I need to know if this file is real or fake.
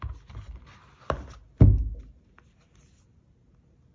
real